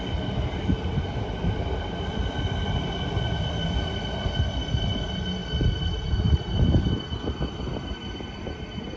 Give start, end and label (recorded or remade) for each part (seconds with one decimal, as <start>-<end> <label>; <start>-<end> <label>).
0.0-9.0 recorded